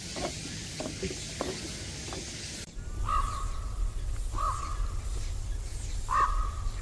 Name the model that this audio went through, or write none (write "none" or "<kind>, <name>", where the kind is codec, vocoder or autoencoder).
none